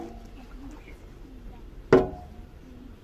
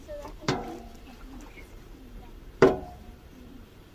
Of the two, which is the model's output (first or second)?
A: second